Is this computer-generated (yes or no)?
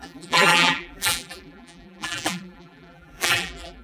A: yes